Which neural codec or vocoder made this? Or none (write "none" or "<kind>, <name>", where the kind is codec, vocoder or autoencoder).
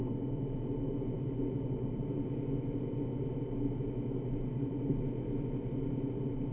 none